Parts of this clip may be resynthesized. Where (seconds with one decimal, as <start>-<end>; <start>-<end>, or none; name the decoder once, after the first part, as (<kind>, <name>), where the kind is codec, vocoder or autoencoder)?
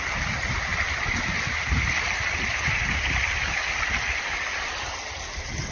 none